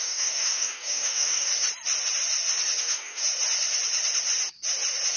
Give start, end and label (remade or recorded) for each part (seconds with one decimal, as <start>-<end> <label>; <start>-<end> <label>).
0.0-1.5 remade; 1.5-2.8 recorded; 2.8-3.2 remade; 3.2-5.2 recorded